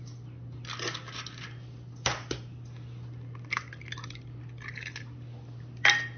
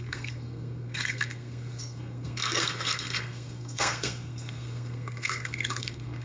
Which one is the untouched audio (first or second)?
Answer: first